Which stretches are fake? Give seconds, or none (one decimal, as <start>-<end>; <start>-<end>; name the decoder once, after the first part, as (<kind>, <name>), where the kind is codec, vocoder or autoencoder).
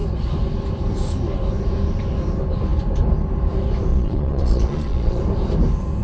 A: 3.9-5.2 (vocoder, Vocos)